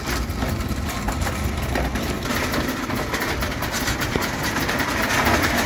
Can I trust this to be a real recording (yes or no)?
yes